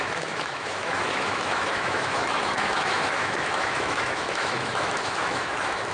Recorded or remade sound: remade